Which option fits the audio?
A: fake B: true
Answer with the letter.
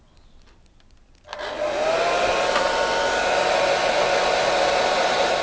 B